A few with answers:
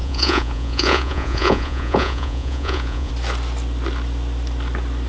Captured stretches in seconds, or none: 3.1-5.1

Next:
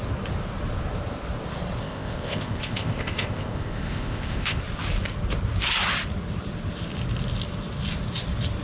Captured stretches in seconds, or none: 0.0-1.8; 4.6-8.6

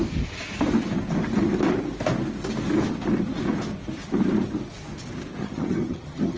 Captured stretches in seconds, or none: 0.0-5.4

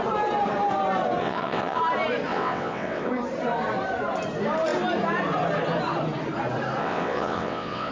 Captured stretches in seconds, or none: 0.0-1.2; 1.8-2.3; 3.1-6.8

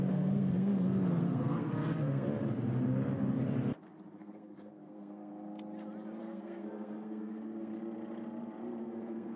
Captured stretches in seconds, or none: 2.3-4.2; 5.3-6.2; 7.7-8.8

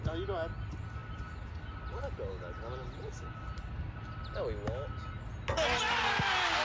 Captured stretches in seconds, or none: 0.0-6.6

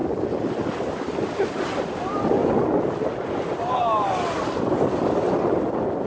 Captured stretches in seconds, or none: 0.0-6.1